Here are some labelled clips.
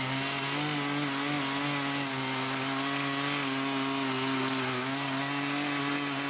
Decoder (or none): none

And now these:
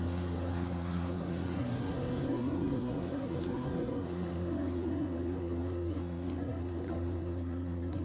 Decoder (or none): codec, SNAC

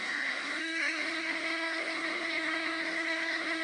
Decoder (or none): codec, SNAC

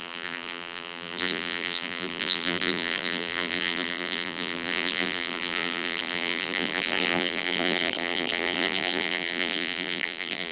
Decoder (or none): vocoder, BigVGAN v2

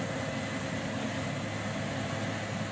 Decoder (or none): none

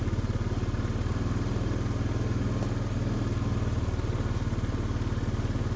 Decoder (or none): none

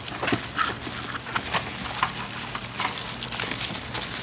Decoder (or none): none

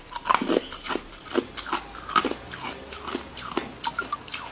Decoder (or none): none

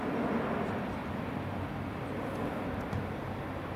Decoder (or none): none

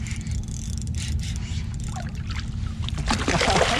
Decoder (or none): none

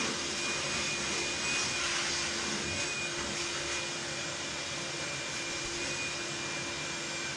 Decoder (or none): none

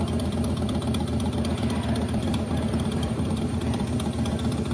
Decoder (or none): vocoder, BigVGAN v2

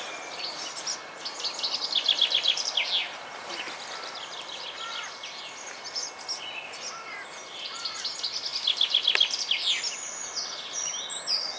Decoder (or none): none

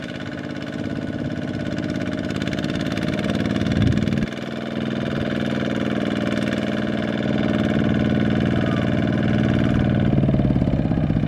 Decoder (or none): none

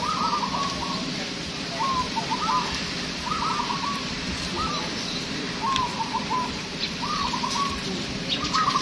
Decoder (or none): none